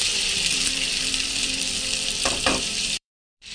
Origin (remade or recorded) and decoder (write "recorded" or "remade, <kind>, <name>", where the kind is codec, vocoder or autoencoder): remade, vocoder, BigVGAN v2